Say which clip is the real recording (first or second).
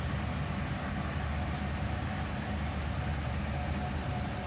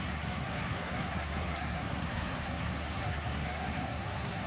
first